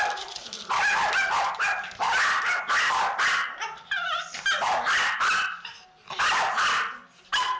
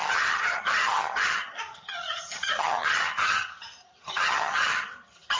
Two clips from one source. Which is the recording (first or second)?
first